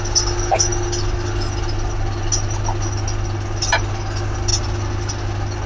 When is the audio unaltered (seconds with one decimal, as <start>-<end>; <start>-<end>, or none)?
0.0-5.7